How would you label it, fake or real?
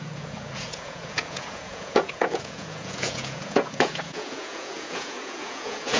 fake